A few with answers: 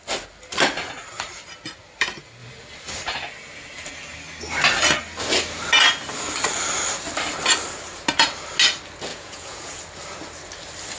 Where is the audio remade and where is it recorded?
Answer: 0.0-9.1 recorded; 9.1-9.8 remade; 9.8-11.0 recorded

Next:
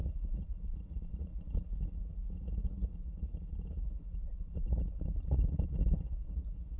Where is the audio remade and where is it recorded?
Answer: 0.0-6.8 remade

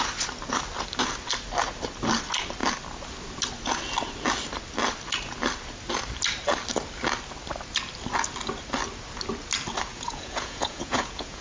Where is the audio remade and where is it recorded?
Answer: 0.0-9.9 recorded; 9.9-11.4 remade

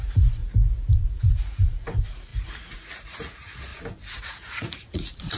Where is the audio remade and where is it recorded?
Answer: 0.0-0.4 remade; 0.4-0.9 recorded; 0.9-3.7 remade; 3.7-4.2 recorded; 4.2-5.4 remade

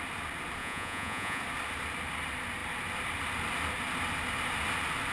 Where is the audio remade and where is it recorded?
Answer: 0.0-0.6 recorded; 0.6-1.4 remade; 1.4-5.1 recorded

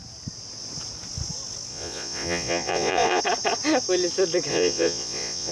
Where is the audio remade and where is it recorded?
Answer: 0.0-1.7 recorded; 1.7-3.2 remade; 3.2-4.5 recorded; 4.5-5.5 remade